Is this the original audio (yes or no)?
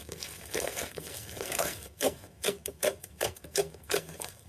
no